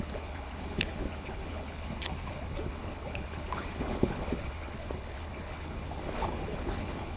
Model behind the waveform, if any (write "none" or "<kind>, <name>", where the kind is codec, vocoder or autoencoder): codec, HILCodec